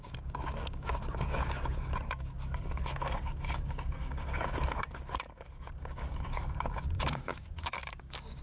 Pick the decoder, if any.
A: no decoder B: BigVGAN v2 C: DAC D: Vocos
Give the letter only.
C